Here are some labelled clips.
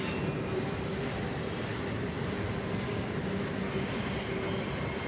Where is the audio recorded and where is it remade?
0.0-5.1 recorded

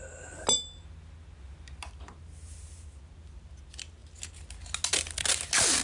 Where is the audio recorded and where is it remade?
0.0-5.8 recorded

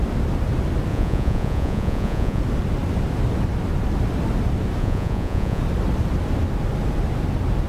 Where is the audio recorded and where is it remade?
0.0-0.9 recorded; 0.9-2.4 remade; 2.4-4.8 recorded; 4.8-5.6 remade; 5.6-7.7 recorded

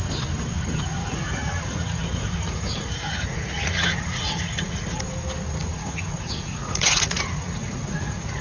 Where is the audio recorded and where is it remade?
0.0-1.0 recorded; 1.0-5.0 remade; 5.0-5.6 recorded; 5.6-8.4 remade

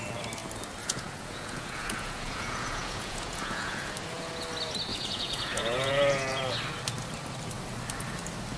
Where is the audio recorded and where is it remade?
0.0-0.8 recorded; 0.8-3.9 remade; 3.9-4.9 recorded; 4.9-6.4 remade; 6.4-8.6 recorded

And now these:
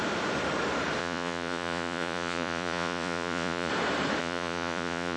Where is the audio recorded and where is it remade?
0.0-1.0 recorded; 1.0-3.7 remade; 3.7-4.2 recorded; 4.2-5.2 remade

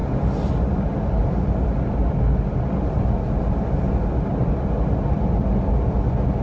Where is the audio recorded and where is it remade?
0.0-6.4 recorded

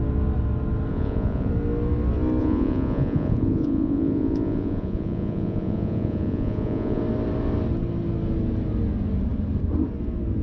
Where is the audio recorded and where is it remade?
0.0-0.9 recorded; 0.9-1.5 remade; 1.5-2.4 recorded; 2.4-7.0 remade; 7.0-10.4 recorded